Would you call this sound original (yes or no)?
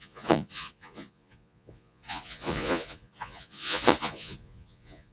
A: no